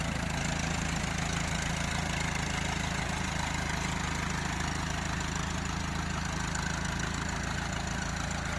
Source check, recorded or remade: recorded